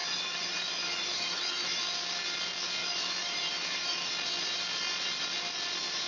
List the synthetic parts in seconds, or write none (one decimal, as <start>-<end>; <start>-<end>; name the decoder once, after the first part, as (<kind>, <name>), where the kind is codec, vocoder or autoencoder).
0.0-1.8 (autoencoder, DAC-VAE); 2.8-4.1